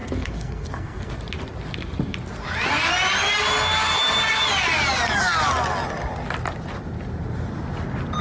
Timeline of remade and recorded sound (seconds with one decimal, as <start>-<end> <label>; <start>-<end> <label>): 0.0-1.1 remade; 1.1-8.2 recorded